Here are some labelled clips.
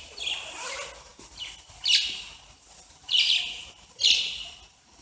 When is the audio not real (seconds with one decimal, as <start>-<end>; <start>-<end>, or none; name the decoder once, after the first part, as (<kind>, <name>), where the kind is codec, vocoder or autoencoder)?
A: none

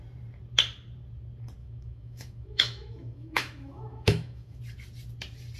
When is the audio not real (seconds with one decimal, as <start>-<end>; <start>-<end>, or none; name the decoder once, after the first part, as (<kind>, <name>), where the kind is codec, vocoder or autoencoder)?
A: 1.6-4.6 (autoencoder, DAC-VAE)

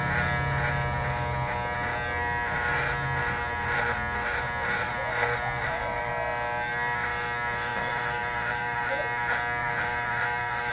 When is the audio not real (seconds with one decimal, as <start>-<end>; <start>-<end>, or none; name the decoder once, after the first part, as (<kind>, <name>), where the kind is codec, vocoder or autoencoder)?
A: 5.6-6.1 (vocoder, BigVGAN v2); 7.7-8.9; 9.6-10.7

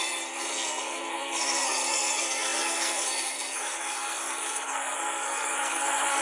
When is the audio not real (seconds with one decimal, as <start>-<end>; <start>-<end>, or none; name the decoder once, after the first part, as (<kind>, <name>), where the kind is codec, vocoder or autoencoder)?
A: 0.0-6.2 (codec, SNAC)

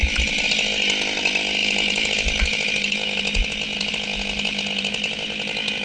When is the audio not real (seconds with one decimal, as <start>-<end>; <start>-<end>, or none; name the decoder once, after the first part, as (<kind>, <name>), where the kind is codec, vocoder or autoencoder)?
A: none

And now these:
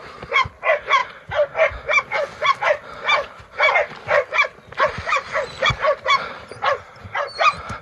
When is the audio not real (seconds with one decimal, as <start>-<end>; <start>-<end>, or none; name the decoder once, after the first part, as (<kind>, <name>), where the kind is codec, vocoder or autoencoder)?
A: none

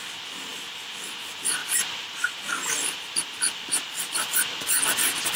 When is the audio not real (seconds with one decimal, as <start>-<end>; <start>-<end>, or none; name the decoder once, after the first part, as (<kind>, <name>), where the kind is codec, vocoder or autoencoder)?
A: 0.5-1.0 (vocoder, BigVGAN v2); 1.6-4.8